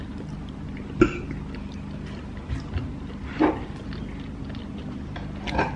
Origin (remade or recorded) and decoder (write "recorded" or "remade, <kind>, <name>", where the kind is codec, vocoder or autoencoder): recorded